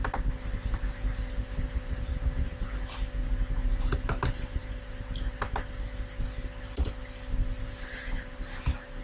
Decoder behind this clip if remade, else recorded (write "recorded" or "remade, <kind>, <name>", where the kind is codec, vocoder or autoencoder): recorded